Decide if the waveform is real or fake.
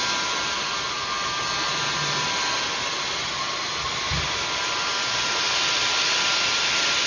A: real